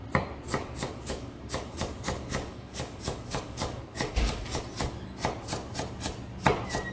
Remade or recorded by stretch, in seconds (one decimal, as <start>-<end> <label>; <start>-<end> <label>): 0.0-0.5 recorded; 0.5-4.6 remade; 4.6-6.9 recorded